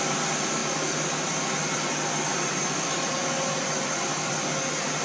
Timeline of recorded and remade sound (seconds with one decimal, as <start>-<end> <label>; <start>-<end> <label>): 0.0-5.0 recorded